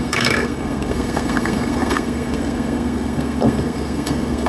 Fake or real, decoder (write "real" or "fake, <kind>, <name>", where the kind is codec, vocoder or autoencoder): fake, codec, SNAC